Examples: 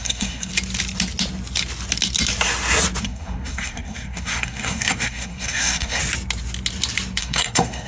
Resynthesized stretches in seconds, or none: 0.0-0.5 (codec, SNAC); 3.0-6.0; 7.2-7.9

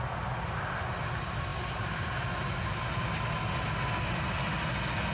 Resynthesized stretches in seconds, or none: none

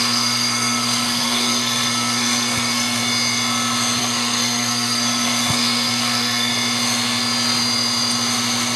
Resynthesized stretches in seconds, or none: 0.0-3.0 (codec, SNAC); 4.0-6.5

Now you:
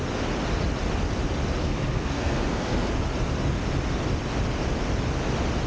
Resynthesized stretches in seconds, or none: 1.6-2.9 (codec, SNAC)

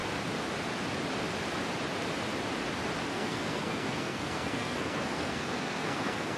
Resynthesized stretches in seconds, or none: 3.1-6.4 (codec, SNAC)

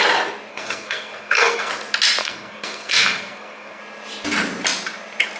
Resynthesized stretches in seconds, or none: 0.5-1.7 (codec, SNAC); 2.2-3.8

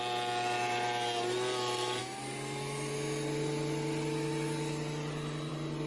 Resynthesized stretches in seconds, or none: none